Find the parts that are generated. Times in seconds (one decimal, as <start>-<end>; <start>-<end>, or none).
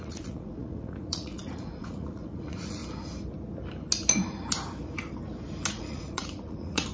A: 0.0-2.8; 5.7-6.9